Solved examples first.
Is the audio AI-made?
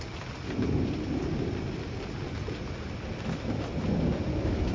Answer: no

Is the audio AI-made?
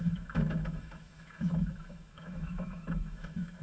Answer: yes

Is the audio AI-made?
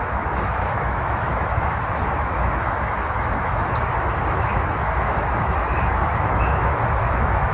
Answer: yes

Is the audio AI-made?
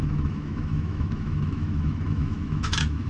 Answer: yes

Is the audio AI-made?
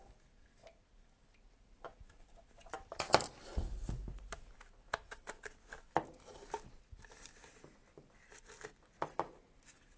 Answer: no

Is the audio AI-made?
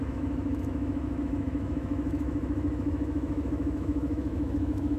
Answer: yes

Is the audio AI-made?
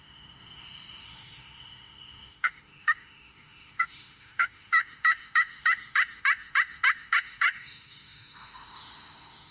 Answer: yes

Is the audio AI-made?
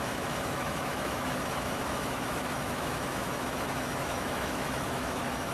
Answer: yes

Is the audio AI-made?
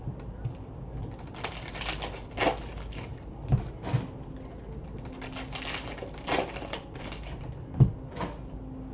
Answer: no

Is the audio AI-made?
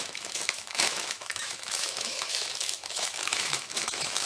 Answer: yes